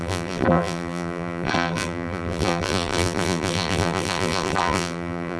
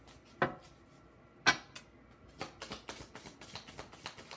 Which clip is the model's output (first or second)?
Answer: first